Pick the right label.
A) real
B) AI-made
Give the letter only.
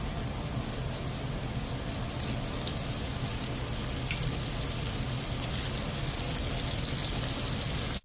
A